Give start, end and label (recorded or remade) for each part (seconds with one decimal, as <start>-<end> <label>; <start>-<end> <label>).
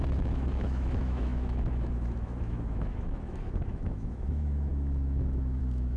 0.0-6.0 remade